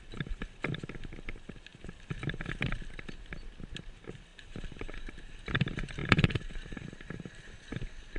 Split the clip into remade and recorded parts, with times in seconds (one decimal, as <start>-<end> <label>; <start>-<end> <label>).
0.0-4.3 recorded; 4.3-5.3 remade; 5.3-6.0 recorded; 6.0-7.6 remade; 7.6-8.2 recorded